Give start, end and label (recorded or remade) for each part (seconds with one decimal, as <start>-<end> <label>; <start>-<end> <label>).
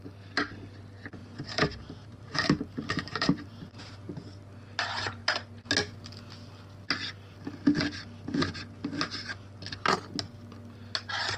0.0-1.2 recorded; 1.2-3.9 remade; 3.9-11.4 recorded